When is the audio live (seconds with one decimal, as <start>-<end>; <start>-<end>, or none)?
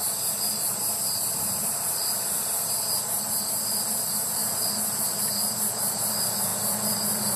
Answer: 0.0-7.4